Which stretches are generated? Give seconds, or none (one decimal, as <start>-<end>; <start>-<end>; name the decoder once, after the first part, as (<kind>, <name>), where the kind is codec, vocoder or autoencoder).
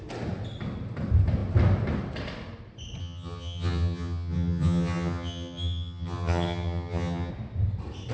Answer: 3.0-7.3 (vocoder, HiFi-GAN)